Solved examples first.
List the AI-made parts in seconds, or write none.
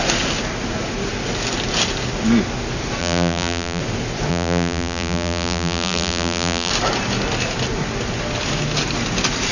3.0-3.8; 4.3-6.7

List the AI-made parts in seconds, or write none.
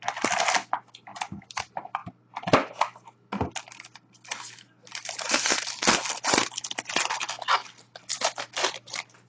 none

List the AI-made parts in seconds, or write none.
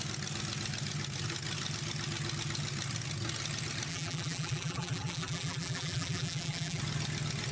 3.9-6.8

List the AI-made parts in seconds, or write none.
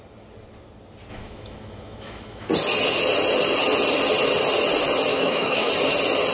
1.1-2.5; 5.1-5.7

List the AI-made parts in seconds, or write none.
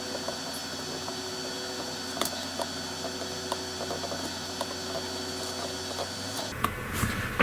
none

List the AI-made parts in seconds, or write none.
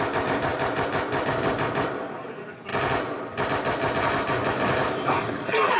none